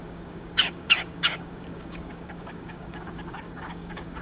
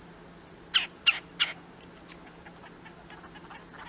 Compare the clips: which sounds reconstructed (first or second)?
first